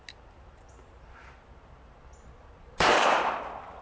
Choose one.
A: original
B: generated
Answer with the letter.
A